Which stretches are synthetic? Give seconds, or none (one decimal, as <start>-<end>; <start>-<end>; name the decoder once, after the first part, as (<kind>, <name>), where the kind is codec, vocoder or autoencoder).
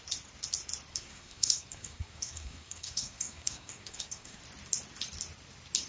0.9-4.4 (codec, SNAC)